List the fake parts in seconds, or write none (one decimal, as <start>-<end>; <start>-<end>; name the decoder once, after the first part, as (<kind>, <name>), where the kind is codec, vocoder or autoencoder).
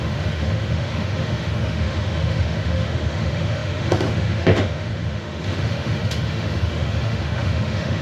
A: 0.0-8.0 (autoencoder, DAC-VAE)